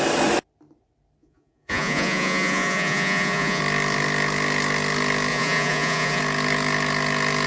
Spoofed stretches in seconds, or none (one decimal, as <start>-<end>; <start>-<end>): 1.2-3.6; 5.3-6.2